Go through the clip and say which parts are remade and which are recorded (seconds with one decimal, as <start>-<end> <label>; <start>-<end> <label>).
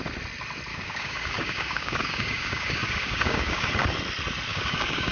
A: 0.0-0.7 recorded; 0.7-3.7 remade; 3.7-4.5 recorded; 4.5-5.1 remade